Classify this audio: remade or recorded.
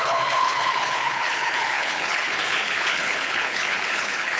remade